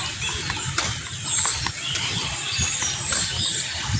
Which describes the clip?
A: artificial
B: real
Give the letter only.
B